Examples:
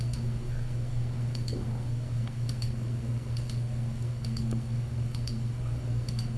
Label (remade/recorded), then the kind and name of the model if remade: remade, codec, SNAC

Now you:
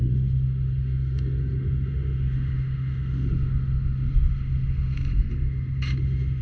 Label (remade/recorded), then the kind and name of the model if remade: remade, autoencoder, DAC-VAE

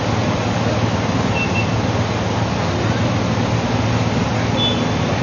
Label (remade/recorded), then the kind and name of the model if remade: recorded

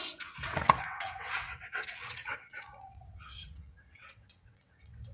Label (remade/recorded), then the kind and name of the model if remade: remade, vocoder, WaveNeXt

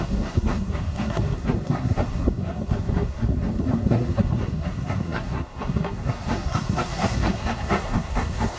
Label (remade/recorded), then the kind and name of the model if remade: remade, codec, SNAC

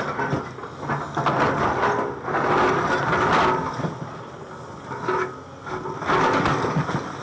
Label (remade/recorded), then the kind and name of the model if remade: recorded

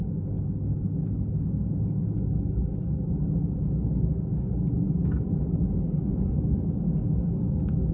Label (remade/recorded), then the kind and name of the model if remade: remade, codec, DAC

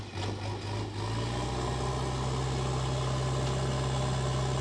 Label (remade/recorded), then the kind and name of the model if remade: recorded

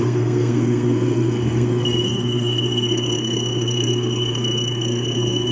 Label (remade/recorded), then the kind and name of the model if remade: remade, codec, SNAC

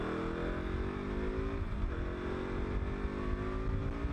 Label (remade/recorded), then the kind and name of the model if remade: recorded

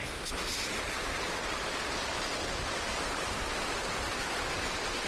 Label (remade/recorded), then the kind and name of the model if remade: recorded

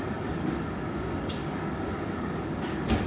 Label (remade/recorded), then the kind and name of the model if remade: remade, codec, DAC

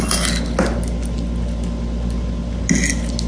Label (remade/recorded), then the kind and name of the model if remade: recorded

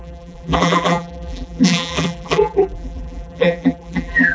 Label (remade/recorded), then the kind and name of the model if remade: remade, vocoder, BigVGAN v2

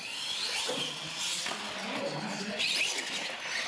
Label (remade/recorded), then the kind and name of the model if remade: recorded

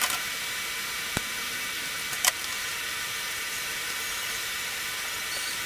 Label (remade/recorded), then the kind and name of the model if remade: remade, vocoder, BigVGAN v2